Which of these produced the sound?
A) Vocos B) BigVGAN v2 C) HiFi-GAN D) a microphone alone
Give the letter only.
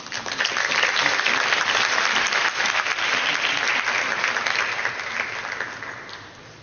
D